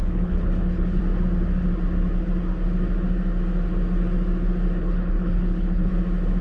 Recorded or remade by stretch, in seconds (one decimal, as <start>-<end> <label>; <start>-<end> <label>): 0.0-1.0 remade; 1.0-4.8 recorded; 4.8-5.9 remade; 5.9-6.4 recorded